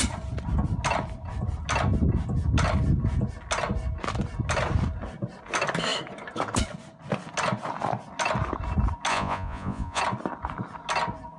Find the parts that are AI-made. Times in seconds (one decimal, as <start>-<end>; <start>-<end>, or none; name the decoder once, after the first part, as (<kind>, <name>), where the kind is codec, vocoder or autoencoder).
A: 9.1-10.0 (vocoder, Vocos)